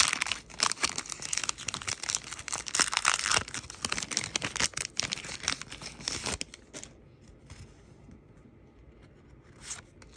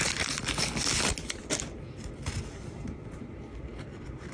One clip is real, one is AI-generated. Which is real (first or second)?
first